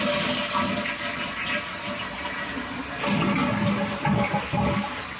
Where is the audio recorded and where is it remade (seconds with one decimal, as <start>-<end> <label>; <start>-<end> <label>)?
0.0-5.2 recorded